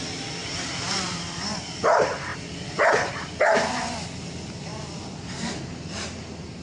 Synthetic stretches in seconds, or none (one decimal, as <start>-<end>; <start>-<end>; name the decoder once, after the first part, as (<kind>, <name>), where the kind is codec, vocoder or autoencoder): 0.4-1.1 (vocoder, BigVGAN v2)